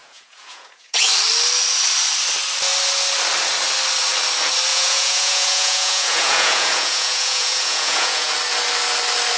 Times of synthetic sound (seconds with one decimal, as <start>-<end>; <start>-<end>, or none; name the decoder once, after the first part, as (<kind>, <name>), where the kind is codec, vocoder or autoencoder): 0.0-1.1 (vocoder, Vocos); 4.7-8.3